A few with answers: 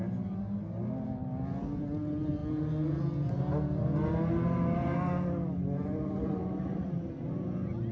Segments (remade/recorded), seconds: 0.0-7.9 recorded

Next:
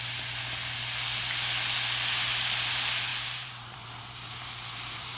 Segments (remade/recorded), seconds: 0.0-3.1 recorded; 3.1-5.2 remade

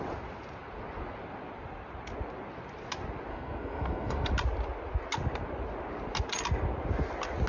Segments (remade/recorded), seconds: 0.0-3.3 recorded; 3.3-4.3 remade; 4.3-7.5 recorded

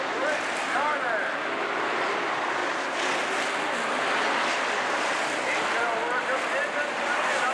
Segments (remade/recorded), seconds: 0.0-7.5 recorded

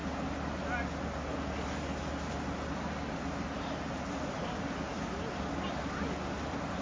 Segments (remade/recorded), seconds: 0.0-4.1 recorded; 4.1-6.8 remade

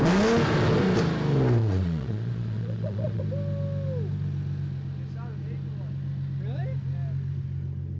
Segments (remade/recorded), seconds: 0.0-1.6 recorded; 1.6-3.2 remade; 3.2-8.0 recorded

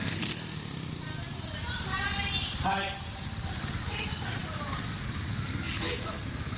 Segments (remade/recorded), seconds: 0.0-6.6 recorded

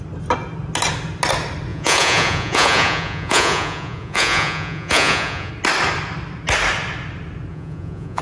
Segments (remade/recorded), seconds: 0.0-1.7 recorded; 1.7-5.5 remade; 5.5-7.5 recorded; 7.5-8.2 remade